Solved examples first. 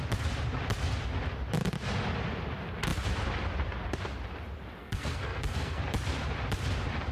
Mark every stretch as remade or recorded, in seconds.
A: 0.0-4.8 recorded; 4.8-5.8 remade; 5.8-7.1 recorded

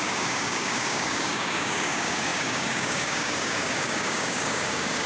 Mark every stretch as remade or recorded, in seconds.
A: 0.0-5.1 remade

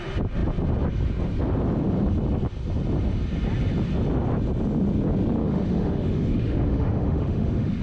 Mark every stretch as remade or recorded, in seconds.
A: 0.0-5.4 recorded; 5.4-7.8 remade

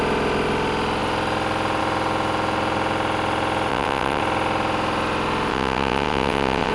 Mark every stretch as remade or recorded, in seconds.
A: 0.0-3.7 recorded; 3.7-4.2 remade; 4.2-5.5 recorded; 5.5-6.7 remade

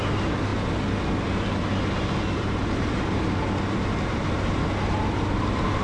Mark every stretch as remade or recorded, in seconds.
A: 0.0-5.8 recorded

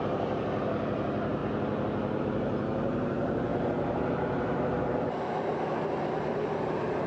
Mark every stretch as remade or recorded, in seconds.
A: 0.0-1.4 remade; 1.4-2.2 recorded; 2.2-7.1 remade

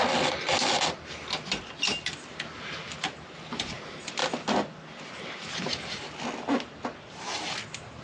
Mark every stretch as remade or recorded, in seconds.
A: 0.0-8.0 recorded